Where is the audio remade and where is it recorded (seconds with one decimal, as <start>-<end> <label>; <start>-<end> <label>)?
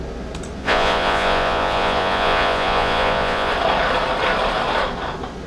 0.0-0.6 recorded; 0.6-3.5 remade; 3.5-5.5 recorded